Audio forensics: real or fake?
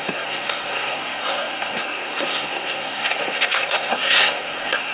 fake